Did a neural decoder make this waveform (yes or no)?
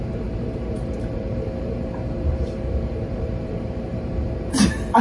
yes